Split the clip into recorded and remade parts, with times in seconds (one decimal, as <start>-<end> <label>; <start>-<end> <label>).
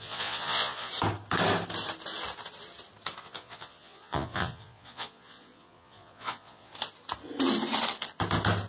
0.0-0.9 remade; 0.9-3.2 recorded; 3.2-6.7 remade; 6.7-8.7 recorded